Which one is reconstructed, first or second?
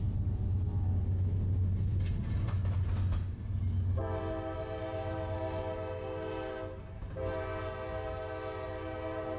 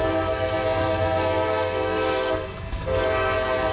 second